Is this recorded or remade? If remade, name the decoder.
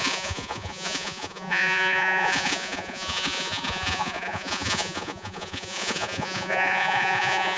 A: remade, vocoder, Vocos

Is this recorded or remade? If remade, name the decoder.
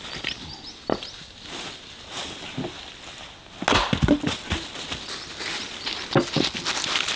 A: recorded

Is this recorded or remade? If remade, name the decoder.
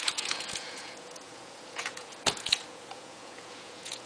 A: remade, vocoder, Vocos